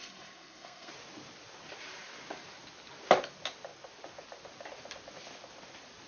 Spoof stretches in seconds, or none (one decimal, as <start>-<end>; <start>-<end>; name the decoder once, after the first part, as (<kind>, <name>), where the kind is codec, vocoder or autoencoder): 0.0-0.9 (codec, SNAC)